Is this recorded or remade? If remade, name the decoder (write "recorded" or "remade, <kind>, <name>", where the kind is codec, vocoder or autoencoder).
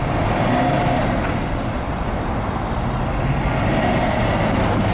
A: recorded